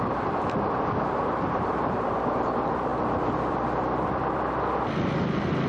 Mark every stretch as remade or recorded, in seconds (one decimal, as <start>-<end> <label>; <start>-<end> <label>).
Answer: 0.0-5.7 recorded